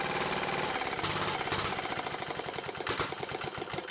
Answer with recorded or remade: recorded